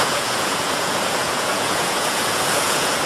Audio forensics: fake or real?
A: fake